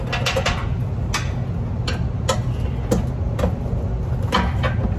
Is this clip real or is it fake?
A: real